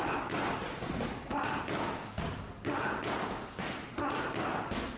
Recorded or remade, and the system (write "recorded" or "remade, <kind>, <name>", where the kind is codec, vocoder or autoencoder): recorded